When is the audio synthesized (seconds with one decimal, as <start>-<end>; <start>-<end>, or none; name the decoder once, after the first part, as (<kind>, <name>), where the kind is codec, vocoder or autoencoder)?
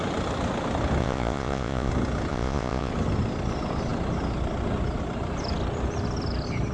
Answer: 1.0-1.9 (vocoder, Vocos); 2.3-2.9